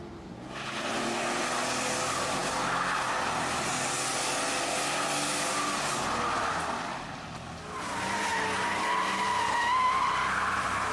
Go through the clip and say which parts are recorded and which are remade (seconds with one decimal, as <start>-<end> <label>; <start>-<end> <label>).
0.0-10.9 recorded